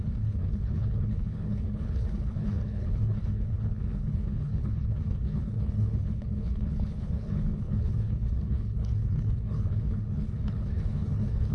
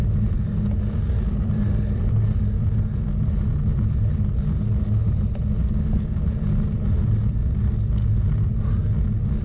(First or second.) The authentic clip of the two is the second